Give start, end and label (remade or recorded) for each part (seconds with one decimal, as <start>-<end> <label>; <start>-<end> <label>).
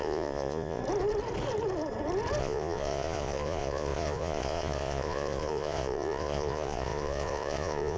0.0-0.8 remade; 0.8-2.4 recorded; 2.4-8.0 remade